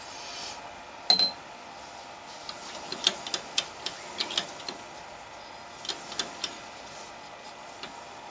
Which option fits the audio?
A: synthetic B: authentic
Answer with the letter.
B